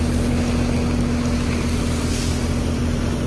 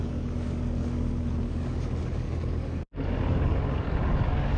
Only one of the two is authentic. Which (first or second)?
first